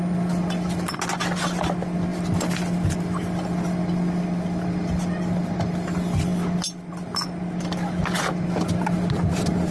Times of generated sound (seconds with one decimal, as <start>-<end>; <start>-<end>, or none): none